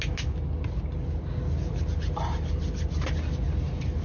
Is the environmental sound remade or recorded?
recorded